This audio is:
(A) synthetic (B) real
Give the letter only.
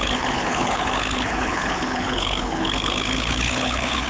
A